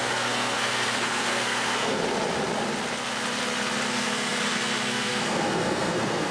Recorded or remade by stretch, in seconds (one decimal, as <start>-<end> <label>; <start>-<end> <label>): 0.0-2.0 remade; 2.0-3.9 recorded; 3.9-6.3 remade